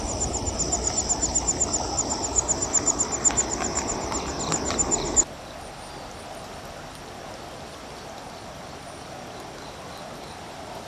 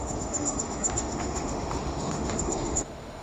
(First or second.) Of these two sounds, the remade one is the second